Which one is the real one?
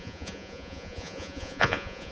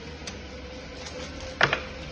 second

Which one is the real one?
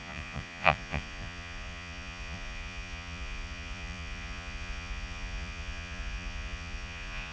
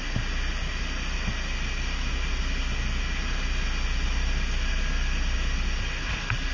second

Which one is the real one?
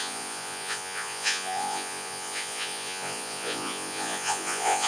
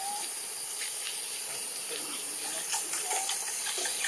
second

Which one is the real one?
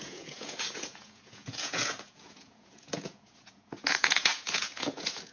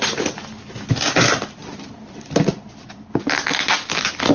second